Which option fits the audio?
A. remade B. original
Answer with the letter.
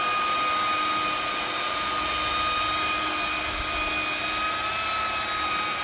B